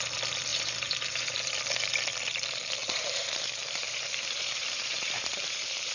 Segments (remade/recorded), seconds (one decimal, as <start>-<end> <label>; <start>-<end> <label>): 0.0-0.5 recorded; 0.5-1.5 remade; 1.5-2.8 recorded; 2.8-5.9 remade